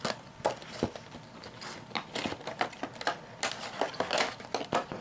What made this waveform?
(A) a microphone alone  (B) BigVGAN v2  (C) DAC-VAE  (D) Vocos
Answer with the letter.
A